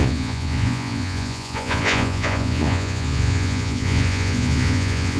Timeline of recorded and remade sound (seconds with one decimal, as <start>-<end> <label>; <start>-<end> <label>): 0.0-5.2 remade

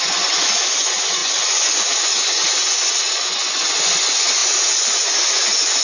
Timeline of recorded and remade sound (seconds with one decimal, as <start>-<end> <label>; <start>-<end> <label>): 0.0-5.8 remade

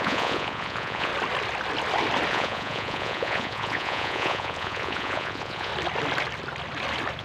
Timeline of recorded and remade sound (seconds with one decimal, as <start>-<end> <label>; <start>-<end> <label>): 0.0-1.1 remade; 1.1-2.3 recorded; 2.3-5.7 remade; 5.7-7.2 recorded

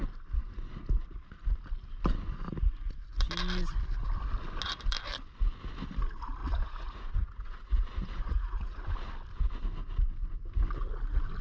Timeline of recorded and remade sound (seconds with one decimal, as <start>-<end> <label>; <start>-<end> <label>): 0.0-6.4 recorded; 6.4-9.1 remade; 9.1-11.4 recorded

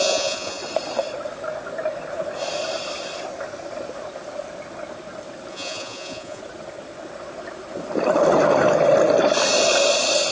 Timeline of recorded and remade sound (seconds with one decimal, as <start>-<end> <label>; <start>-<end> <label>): 0.0-0.6 remade; 0.6-5.5 recorded; 5.5-6.4 remade; 6.4-10.3 recorded

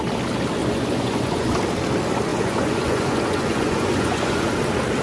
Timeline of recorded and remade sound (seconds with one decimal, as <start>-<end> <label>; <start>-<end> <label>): 0.0-0.6 recorded; 0.6-1.5 remade; 1.5-2.3 recorded; 2.3-4.5 remade; 4.5-5.0 recorded

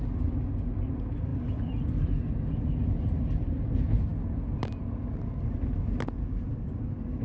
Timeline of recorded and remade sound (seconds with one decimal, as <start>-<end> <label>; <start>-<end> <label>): 0.0-7.2 recorded

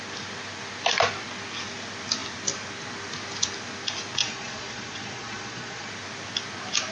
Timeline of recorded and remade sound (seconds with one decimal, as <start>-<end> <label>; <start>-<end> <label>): 0.0-4.2 recorded; 4.2-5.9 remade; 5.9-6.9 recorded